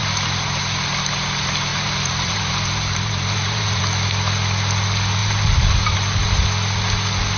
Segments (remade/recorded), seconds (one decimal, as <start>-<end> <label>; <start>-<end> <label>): 0.0-0.6 remade; 0.6-1.7 recorded; 1.7-3.8 remade; 3.8-5.2 recorded; 5.2-6.2 remade; 6.2-7.4 recorded